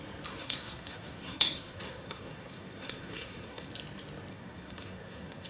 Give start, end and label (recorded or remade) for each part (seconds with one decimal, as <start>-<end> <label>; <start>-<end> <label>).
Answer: 0.0-0.4 recorded; 0.4-3.7 remade; 3.7-4.3 recorded; 4.3-5.5 remade